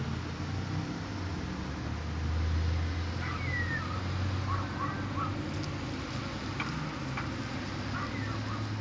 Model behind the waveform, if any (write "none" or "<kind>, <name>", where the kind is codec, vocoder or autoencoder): none